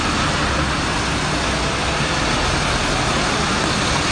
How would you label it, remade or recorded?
recorded